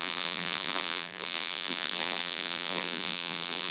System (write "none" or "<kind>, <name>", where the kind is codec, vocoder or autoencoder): vocoder, BigVGAN v2